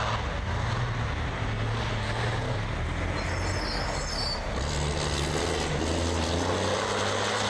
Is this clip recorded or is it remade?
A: recorded